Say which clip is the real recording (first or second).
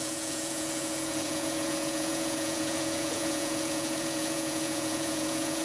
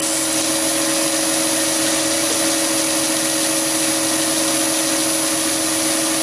second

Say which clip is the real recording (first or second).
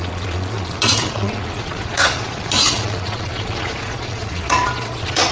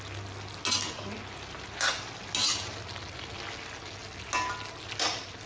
second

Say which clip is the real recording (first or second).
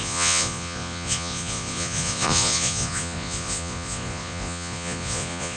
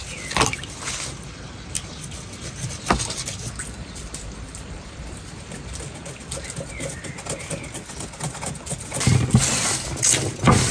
second